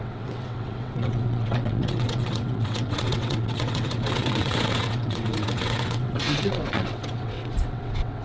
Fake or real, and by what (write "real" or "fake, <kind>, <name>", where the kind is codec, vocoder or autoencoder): fake, vocoder, WaveNeXt